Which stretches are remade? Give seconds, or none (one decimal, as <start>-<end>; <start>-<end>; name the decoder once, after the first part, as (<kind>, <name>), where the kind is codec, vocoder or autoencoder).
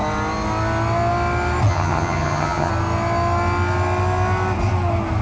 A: 1.7-2.7 (vocoder, HiFi-GAN)